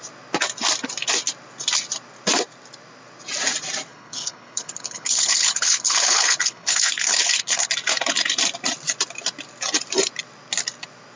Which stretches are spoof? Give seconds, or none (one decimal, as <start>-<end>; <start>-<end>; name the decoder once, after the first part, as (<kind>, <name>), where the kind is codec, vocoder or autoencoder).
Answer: 3.9-7.7 (codec, HILCodec)